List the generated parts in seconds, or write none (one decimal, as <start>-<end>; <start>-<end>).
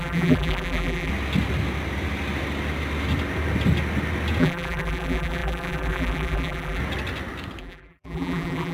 0.0-1.1; 4.4-6.8; 7.6-8.7